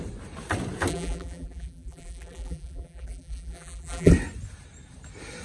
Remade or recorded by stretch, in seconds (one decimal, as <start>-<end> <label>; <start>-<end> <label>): 0.0-0.9 recorded; 0.9-4.1 remade; 4.1-5.4 recorded

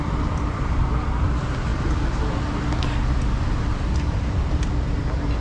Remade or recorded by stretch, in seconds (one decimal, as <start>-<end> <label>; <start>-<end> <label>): 0.0-5.4 recorded

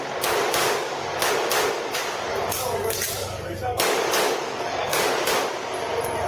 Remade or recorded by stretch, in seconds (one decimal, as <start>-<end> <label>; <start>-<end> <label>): 0.0-0.6 recorded; 0.6-1.3 remade; 1.3-2.3 recorded; 2.3-5.3 remade; 5.3-6.3 recorded

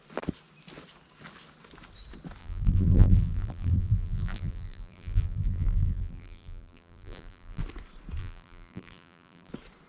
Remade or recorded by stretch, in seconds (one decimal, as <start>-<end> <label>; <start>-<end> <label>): 0.0-2.4 recorded; 2.4-7.6 remade; 7.6-8.2 recorded; 8.2-9.5 remade; 9.5-9.9 recorded

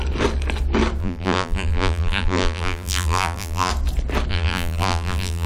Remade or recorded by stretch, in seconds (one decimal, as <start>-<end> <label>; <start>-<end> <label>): 0.0-1.0 recorded; 1.0-3.7 remade; 3.7-4.3 recorded; 4.3-5.5 remade

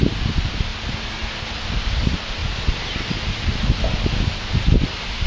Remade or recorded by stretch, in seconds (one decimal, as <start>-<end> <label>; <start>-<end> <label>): 0.0-5.3 recorded

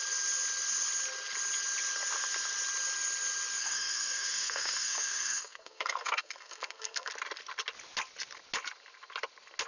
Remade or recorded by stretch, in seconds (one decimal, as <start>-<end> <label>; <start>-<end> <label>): 0.0-3.6 recorded; 3.6-7.1 remade; 7.1-9.7 recorded